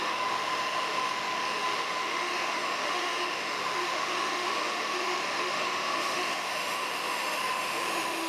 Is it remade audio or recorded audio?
remade